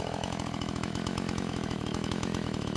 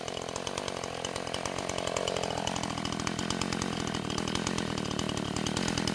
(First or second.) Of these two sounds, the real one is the second